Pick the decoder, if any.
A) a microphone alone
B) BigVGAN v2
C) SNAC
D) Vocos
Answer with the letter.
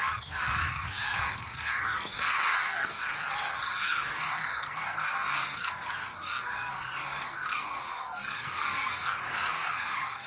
C